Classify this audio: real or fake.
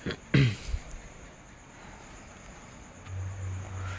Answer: real